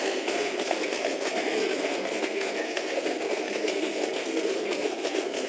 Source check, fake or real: fake